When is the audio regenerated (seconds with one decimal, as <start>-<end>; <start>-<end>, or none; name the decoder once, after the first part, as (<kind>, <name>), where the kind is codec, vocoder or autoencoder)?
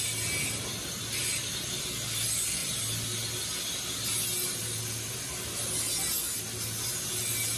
none